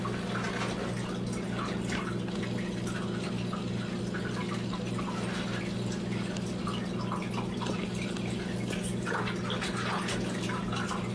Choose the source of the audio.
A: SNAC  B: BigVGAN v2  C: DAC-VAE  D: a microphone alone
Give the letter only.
D